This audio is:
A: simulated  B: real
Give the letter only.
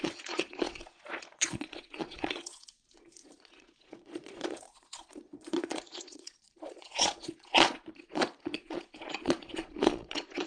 A